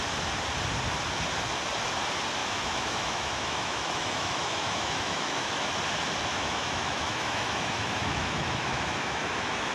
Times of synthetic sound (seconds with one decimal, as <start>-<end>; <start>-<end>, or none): 2.4-5.7; 6.3-9.7